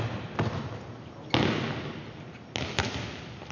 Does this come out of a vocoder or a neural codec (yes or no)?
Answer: no